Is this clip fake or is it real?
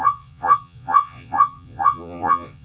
fake